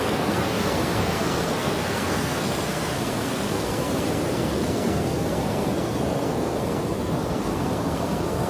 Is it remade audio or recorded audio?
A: remade